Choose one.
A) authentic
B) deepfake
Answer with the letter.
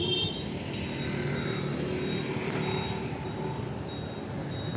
A